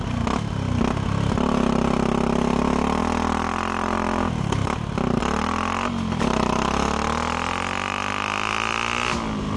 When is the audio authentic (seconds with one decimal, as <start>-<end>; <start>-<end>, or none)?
0.0-9.6